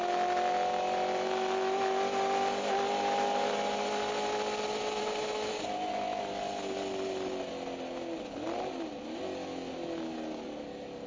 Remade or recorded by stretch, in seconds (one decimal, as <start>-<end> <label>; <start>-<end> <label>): 0.0-5.0 recorded; 5.0-5.5 remade; 5.5-11.1 recorded